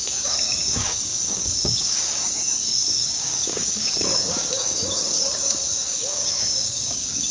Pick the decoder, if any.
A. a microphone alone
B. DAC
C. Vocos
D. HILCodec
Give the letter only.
B